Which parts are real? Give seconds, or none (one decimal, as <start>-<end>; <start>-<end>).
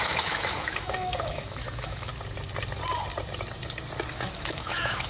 2.1-4.1